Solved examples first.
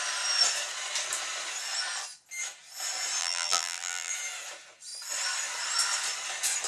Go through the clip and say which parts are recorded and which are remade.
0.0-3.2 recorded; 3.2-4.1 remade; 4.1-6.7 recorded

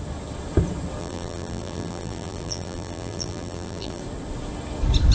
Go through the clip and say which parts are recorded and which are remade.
0.0-1.0 recorded; 1.0-4.0 remade; 4.0-5.1 recorded

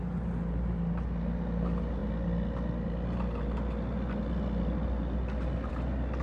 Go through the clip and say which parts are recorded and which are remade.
0.0-6.2 recorded

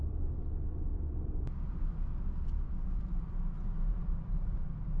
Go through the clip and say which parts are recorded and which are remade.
0.0-5.0 recorded

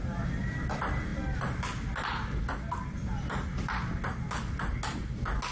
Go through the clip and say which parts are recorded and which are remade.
0.0-5.5 recorded

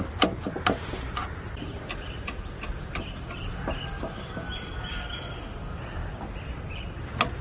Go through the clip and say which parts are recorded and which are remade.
0.0-1.2 recorded; 1.2-3.4 remade; 3.4-4.5 recorded; 4.5-5.1 remade; 5.1-7.4 recorded

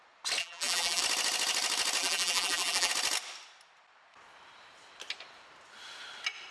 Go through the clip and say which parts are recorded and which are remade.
0.0-0.4 recorded; 0.4-1.0 remade; 1.0-2.0 recorded; 2.0-2.9 remade; 2.9-6.5 recorded

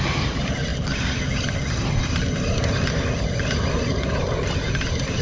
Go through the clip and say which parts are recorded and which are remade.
0.0-5.2 recorded